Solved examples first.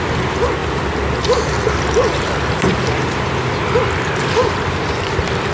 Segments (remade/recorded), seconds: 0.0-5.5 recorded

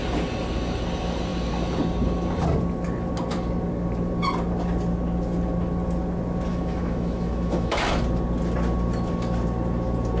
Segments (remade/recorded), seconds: 0.0-6.5 recorded; 6.5-8.0 remade; 8.0-10.2 recorded

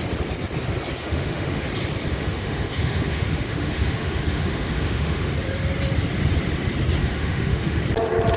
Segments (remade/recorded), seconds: 0.0-1.0 recorded; 1.0-1.7 remade; 1.7-2.1 recorded; 2.1-5.3 remade; 5.3-7.0 recorded; 7.0-7.8 remade; 7.8-8.4 recorded

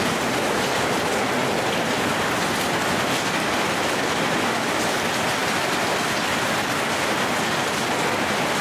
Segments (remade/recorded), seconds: 0.0-8.6 recorded